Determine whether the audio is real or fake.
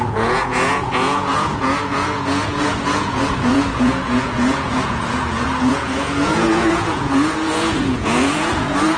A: fake